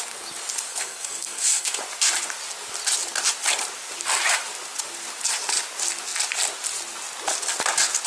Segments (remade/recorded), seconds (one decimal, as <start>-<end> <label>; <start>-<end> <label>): 0.0-0.7 recorded; 0.7-1.8 remade; 1.8-8.1 recorded